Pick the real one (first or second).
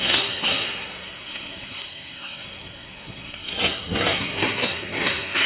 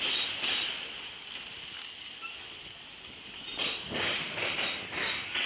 second